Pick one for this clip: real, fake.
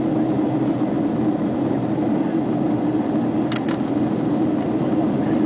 real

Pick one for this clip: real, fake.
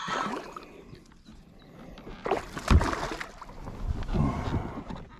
real